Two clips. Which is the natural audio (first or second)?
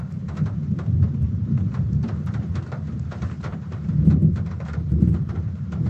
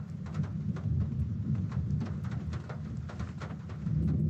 second